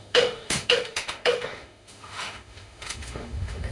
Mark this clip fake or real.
fake